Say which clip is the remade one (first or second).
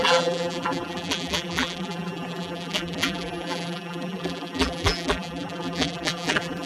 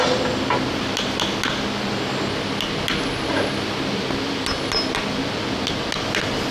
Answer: first